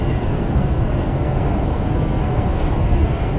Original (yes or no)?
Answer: no